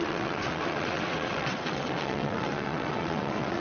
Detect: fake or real fake